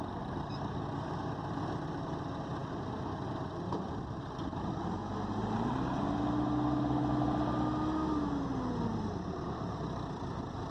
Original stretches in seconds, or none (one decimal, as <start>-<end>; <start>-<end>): 0.0-5.4; 6.0-10.7